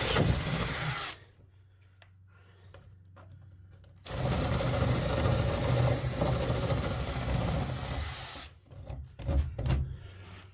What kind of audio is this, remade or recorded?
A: recorded